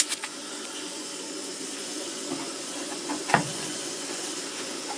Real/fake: fake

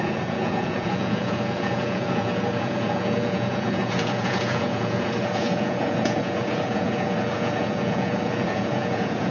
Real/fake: fake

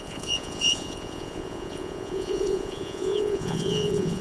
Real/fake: fake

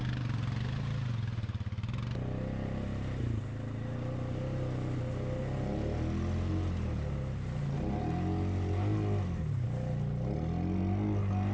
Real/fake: real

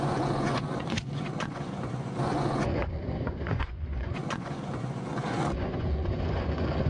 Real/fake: fake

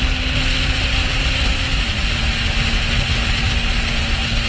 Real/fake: real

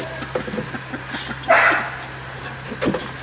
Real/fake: real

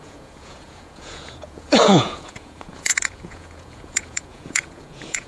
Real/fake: fake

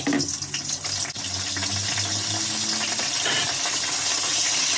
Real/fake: real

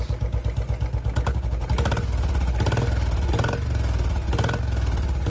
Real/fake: real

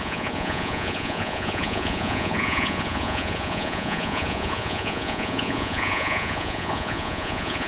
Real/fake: fake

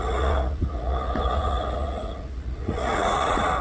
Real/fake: fake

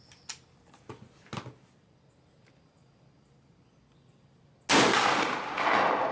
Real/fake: real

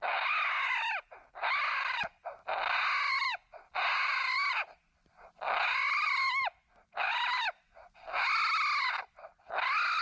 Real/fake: real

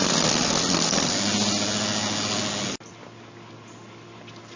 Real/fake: real